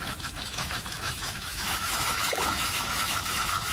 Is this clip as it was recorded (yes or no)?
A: no